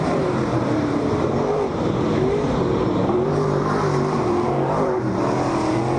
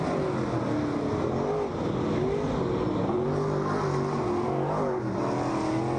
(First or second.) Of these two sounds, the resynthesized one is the first